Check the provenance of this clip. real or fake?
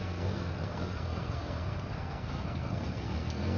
fake